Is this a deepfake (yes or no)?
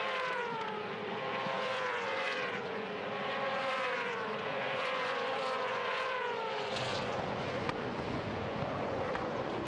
yes